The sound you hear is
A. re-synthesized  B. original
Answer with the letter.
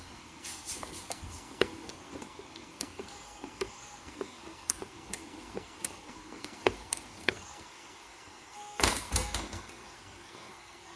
A